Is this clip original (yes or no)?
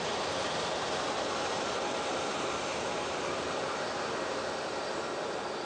yes